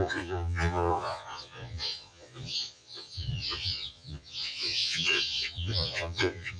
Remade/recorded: remade